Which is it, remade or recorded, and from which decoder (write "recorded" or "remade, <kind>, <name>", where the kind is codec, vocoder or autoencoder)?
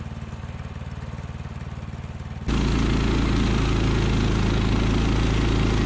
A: recorded